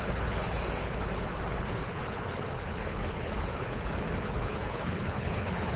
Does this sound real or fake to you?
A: fake